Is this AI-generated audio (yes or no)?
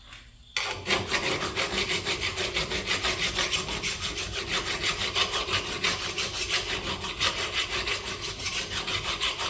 no